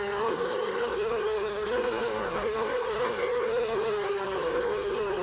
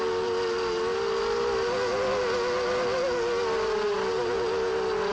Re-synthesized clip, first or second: first